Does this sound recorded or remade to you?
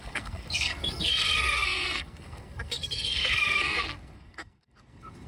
remade